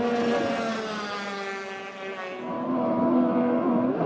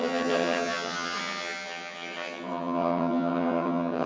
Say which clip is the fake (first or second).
second